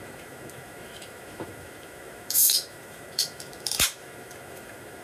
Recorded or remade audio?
remade